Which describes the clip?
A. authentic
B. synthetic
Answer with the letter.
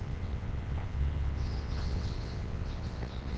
B